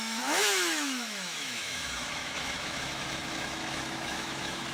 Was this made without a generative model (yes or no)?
no